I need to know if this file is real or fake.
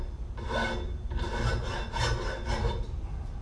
real